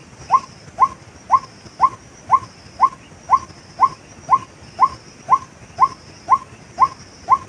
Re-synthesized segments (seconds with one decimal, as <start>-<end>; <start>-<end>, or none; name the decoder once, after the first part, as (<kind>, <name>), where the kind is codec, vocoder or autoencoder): 0.0-0.5 (vocoder, BigVGAN v2)